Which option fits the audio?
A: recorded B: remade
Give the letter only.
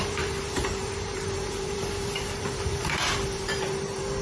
B